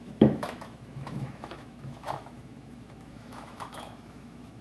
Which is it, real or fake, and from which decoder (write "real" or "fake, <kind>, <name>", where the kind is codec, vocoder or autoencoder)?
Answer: fake, autoencoder, DAC-VAE